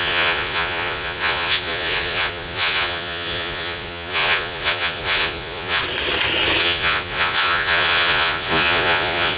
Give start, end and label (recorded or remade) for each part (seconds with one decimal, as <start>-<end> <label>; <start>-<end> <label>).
0.0-5.8 remade; 5.8-6.6 recorded; 6.6-9.4 remade